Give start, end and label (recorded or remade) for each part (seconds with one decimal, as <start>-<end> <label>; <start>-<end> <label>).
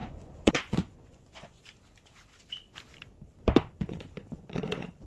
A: 0.0-1.6 remade; 1.6-3.6 recorded; 3.6-5.1 remade